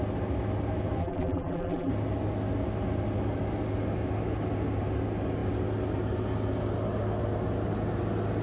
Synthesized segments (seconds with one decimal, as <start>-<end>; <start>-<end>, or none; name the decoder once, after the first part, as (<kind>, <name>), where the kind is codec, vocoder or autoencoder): 1.0-1.9 (vocoder, BigVGAN v2)